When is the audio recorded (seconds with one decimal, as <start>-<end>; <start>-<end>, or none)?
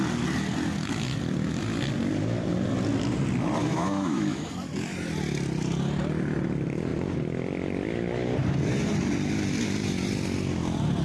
0.0-3.6; 4.5-11.0